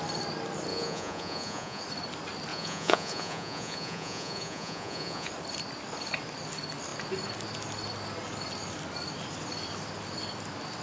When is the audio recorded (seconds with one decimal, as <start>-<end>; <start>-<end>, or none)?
0.0-0.7; 1.8-2.5; 5.3-10.8

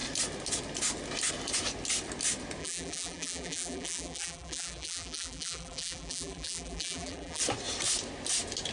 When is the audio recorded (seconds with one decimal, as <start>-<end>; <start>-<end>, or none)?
0.0-2.6; 7.4-8.7

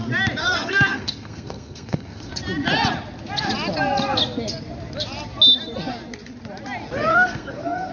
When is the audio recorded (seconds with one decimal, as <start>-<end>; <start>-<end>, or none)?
0.0-0.4; 2.3-7.1

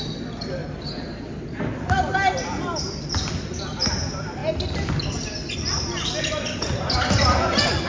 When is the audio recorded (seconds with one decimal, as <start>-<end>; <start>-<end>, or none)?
0.6-1.5; 4.4-6.2